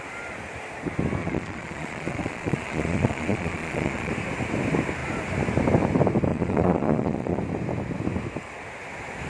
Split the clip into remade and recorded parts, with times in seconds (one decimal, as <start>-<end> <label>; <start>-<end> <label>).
0.0-1.2 recorded; 1.2-4.1 remade; 4.1-6.3 recorded; 6.3-7.4 remade; 7.4-9.3 recorded